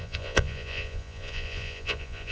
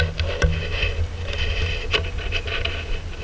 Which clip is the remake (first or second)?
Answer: first